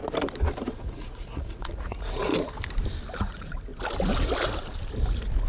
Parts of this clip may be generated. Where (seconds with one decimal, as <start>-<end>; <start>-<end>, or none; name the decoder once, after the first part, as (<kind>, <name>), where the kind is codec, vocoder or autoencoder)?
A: 0.7-2.3 (vocoder, Vocos); 3.2-3.7